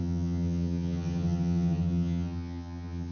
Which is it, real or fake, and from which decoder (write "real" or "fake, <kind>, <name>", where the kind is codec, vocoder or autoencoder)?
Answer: fake, vocoder, HiFi-GAN